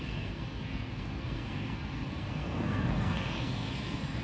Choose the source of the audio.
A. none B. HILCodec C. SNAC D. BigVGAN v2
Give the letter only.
C